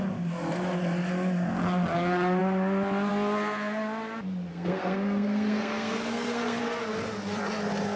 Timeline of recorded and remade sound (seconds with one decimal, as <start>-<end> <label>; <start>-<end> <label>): 0.0-4.5 recorded; 4.5-6.6 remade; 6.6-8.0 recorded